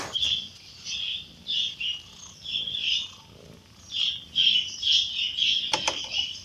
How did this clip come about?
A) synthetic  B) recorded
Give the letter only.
B